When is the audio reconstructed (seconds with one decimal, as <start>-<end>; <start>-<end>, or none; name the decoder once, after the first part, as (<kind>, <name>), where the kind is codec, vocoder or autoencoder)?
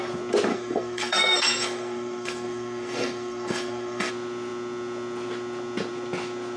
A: 0.5-4.1 (codec, SNAC)